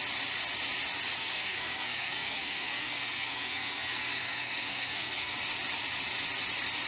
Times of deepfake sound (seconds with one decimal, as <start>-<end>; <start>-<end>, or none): 1.2-5.3